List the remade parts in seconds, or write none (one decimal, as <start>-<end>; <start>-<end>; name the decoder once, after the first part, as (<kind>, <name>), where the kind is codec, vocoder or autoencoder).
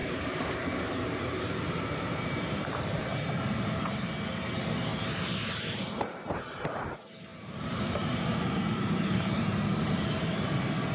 0.0-3.1 (vocoder, BigVGAN v2); 4.9-6.4; 7.3-10.5